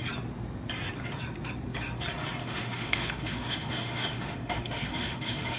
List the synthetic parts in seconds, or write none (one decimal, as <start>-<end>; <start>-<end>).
2.4-5.6